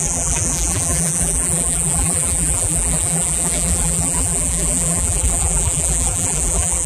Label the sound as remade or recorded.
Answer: remade